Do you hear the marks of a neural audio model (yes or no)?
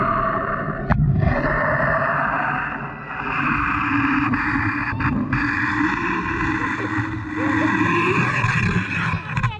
no